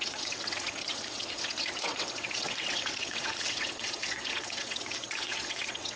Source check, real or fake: fake